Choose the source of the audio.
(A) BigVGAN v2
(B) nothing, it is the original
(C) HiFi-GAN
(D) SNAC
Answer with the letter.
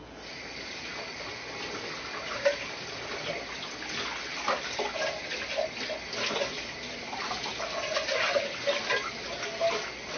B